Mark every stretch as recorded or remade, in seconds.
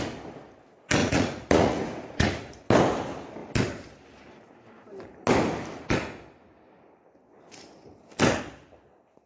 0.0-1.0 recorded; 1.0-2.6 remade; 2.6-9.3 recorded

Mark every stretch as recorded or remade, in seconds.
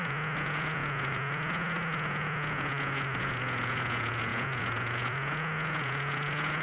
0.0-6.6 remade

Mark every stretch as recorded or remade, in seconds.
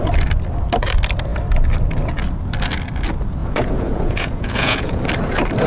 0.0-3.4 recorded; 3.4-5.0 remade; 5.0-5.7 recorded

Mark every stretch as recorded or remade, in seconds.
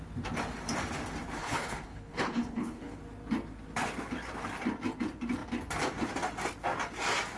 0.0-1.4 recorded; 1.4-3.0 remade; 3.0-7.4 recorded